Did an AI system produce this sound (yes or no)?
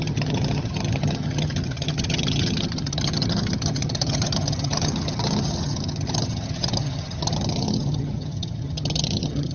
yes